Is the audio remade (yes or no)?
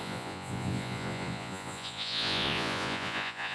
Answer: yes